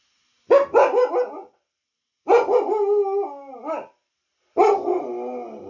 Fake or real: real